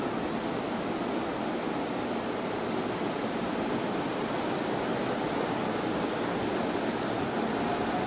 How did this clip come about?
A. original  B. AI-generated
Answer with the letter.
A